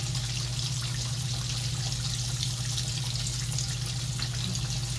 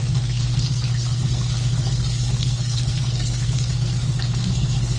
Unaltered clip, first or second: first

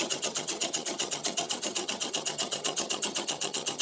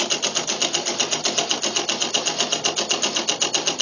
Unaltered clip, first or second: second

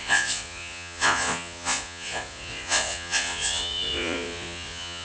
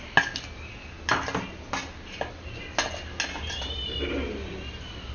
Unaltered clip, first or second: second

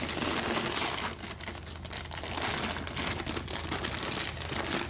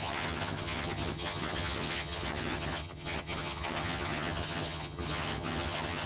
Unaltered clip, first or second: first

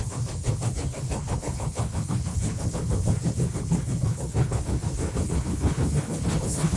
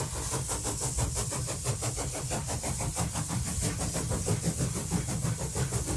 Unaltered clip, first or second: second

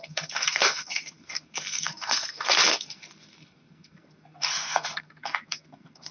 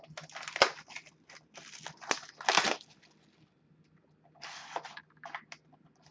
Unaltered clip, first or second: second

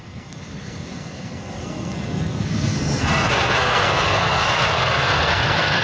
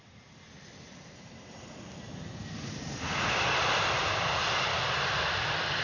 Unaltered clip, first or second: second